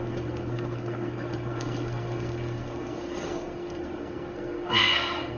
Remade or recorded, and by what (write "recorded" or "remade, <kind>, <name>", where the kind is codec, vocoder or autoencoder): remade, codec, SNAC